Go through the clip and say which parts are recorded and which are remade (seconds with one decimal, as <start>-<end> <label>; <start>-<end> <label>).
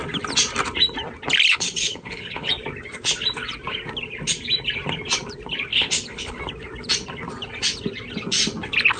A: 0.0-1.5 recorded; 1.5-2.5 remade; 2.5-5.7 recorded; 5.7-6.4 remade; 6.4-9.0 recorded